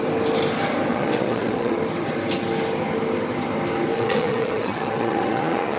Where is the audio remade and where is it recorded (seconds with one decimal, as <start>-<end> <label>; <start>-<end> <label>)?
0.0-0.9 recorded; 0.9-1.8 remade; 1.8-3.9 recorded; 3.9-5.8 remade